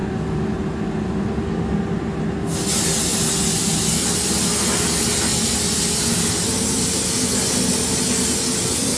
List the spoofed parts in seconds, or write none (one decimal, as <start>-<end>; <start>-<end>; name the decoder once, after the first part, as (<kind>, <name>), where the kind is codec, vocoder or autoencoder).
none